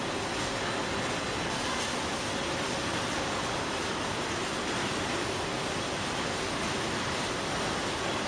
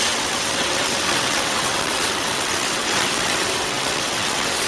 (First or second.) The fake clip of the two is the second